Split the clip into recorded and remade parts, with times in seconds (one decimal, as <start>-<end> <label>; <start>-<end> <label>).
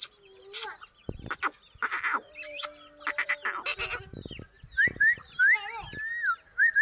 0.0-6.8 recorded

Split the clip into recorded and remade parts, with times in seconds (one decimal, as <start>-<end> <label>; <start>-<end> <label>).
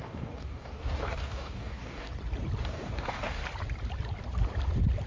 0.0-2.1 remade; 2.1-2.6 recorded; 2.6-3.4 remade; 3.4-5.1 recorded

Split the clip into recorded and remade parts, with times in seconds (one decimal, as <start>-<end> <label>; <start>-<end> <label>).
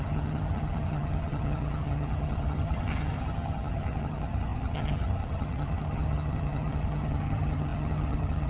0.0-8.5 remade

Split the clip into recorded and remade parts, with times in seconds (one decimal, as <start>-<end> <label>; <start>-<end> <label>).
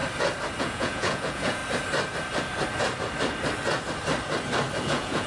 0.0-0.6 recorded; 0.6-1.6 remade; 1.6-4.8 recorded; 4.8-5.3 remade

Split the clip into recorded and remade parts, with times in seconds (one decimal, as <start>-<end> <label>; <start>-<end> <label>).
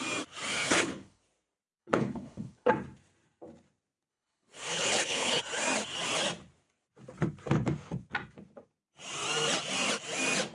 0.0-0.5 recorded; 0.5-1.2 remade; 1.2-1.8 recorded; 1.8-2.7 remade; 2.7-4.1 recorded; 4.1-5.4 remade; 5.4-10.5 recorded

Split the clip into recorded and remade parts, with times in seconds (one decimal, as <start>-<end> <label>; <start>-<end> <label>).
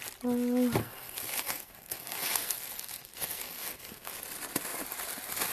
0.0-0.8 recorded; 0.8-4.1 remade; 4.1-5.5 recorded